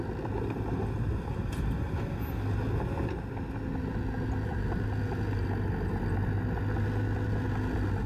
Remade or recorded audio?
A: recorded